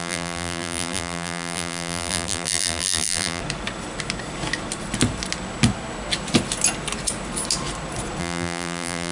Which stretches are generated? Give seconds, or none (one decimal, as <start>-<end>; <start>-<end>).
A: 0.0-3.4; 8.2-9.1